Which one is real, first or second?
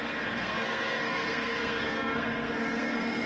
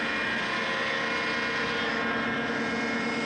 second